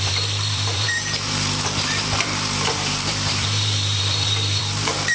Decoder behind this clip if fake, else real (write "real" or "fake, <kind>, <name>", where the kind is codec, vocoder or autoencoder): fake, vocoder, BigVGAN v2